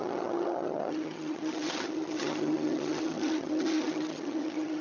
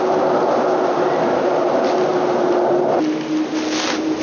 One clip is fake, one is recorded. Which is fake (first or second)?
first